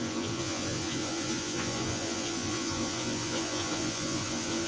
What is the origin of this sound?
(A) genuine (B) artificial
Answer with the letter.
B